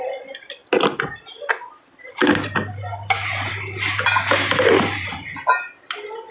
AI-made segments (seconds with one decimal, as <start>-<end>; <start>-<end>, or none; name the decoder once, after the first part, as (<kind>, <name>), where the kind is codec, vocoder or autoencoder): none